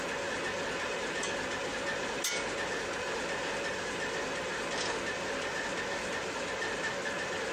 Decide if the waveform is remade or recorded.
recorded